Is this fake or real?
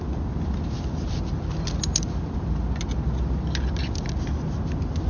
real